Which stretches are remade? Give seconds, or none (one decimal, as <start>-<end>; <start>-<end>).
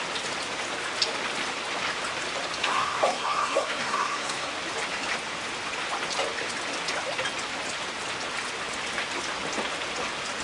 2.6-4.5